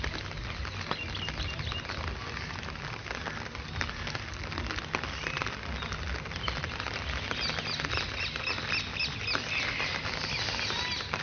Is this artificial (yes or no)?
no